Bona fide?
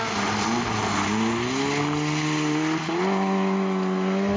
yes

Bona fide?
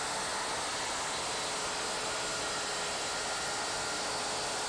yes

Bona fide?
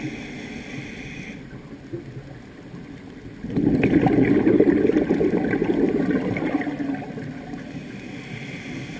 yes